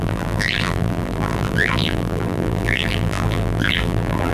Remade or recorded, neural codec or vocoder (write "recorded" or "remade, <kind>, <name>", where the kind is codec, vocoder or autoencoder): remade, vocoder, BigVGAN v2